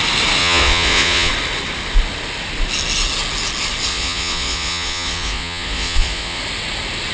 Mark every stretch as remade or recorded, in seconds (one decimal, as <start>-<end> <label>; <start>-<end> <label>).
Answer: 0.0-0.4 recorded; 0.4-1.3 remade; 1.3-3.9 recorded; 3.9-6.4 remade; 6.4-7.1 recorded